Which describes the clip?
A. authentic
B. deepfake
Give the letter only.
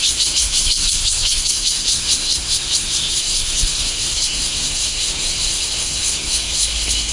B